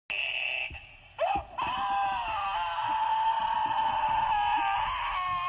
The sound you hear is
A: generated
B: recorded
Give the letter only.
B